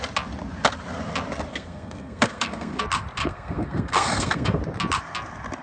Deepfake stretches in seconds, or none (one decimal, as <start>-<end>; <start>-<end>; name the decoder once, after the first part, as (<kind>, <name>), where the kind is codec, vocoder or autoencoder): 1.5-2.8 (codec, SNAC); 3.2-4.6